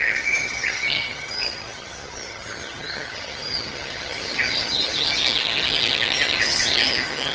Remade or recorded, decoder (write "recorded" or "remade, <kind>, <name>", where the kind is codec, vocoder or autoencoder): remade, vocoder, HiFi-GAN